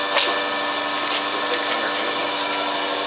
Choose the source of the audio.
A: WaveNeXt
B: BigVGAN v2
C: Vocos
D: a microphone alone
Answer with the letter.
D